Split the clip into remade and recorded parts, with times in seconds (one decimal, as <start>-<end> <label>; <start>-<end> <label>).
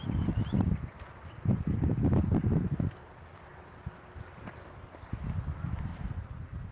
0.0-5.9 recorded; 5.9-6.7 remade